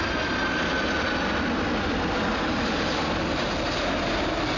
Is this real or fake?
real